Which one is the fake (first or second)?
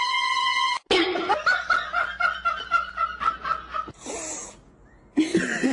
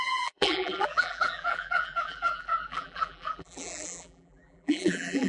second